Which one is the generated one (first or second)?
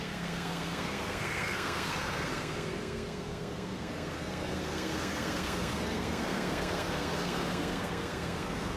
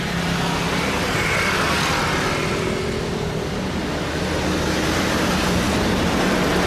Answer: first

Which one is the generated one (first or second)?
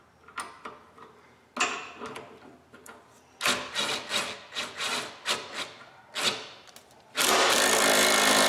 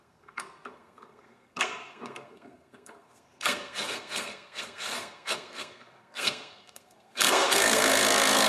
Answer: second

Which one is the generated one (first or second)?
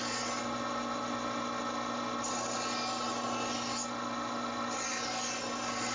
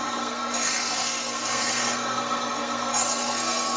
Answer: second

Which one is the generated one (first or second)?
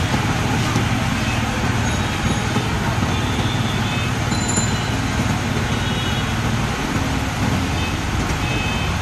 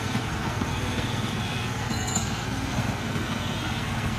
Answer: second